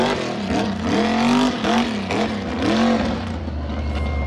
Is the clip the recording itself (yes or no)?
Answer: yes